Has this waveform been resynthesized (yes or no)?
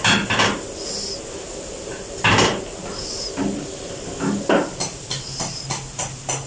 no